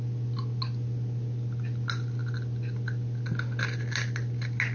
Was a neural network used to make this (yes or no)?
no